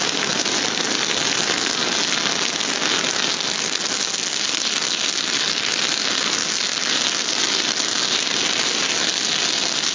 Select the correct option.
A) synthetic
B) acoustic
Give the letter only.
B